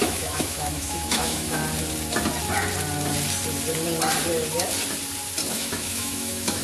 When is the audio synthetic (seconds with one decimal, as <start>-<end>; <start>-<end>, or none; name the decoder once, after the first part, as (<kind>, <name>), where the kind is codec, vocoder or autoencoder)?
0.0-1.6 (autoencoder, DAC-VAE); 5.5-6.6